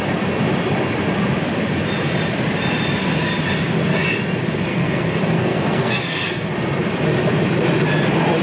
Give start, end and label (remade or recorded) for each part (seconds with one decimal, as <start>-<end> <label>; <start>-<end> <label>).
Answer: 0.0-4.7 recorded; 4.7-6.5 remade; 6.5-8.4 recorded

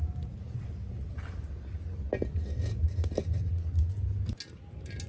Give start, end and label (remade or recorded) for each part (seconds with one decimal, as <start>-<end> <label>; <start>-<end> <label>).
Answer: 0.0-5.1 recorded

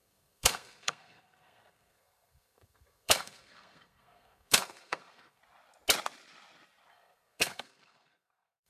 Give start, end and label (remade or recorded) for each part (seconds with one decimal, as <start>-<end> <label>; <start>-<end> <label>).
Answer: 0.0-5.4 remade; 5.4-6.9 recorded; 6.9-8.7 remade